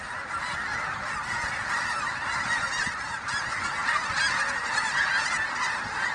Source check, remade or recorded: recorded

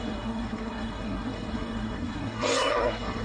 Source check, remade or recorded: remade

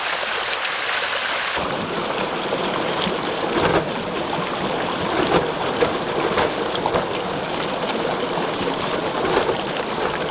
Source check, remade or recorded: recorded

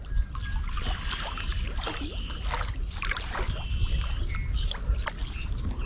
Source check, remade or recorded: recorded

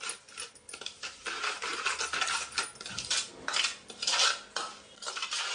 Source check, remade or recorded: recorded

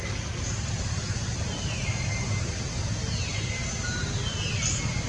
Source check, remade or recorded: recorded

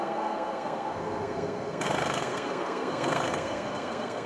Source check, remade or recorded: remade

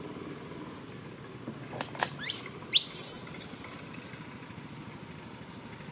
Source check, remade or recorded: recorded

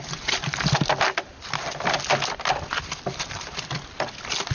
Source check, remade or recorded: recorded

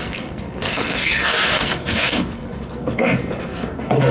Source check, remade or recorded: remade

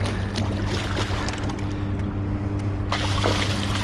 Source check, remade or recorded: recorded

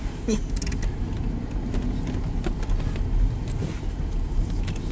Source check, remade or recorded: recorded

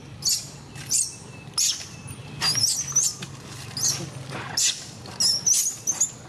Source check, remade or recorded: recorded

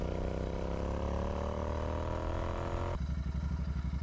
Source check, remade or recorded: recorded